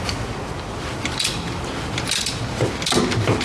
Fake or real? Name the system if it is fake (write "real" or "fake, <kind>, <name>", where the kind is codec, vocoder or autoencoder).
real